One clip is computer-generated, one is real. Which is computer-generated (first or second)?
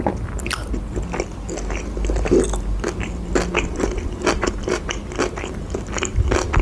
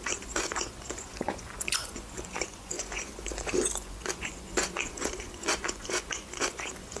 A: second